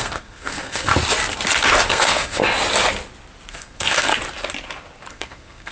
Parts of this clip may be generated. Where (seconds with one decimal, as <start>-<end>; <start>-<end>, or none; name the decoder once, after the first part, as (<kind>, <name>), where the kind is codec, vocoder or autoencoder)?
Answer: 0.0-0.9 (codec, SNAC); 1.9-2.4; 3.5-4.1; 5.1-5.7